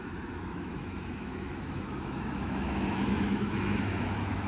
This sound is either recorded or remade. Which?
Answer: remade